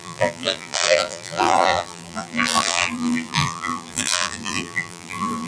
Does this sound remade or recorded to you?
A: remade